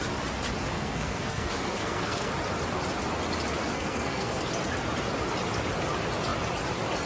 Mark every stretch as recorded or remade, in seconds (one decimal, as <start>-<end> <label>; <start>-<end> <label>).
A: 0.0-0.7 recorded; 0.7-2.3 remade; 2.3-3.6 recorded; 3.6-4.4 remade; 4.4-7.1 recorded

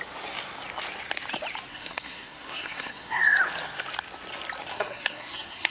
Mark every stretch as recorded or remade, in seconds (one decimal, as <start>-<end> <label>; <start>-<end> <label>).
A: 0.0-1.7 recorded; 1.7-3.4 remade; 3.4-4.7 recorded; 4.7-5.7 remade

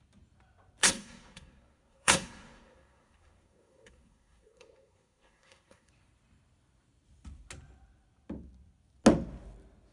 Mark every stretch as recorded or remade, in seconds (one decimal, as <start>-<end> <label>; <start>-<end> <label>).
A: 0.0-0.8 recorded; 0.8-5.9 remade; 5.9-9.9 recorded

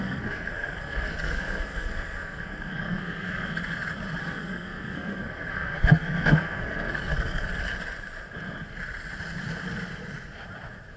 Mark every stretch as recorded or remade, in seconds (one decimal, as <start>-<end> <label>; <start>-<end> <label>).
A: 0.0-3.6 remade; 3.6-4.2 recorded; 4.2-7.5 remade; 7.5-11.0 recorded